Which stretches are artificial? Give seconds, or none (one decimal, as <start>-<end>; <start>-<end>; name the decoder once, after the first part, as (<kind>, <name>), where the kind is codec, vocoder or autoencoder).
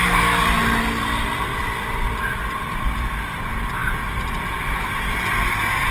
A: 1.5-3.1 (vocoder, BigVGAN v2)